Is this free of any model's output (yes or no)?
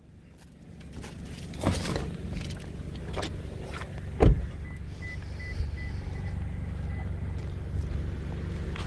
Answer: yes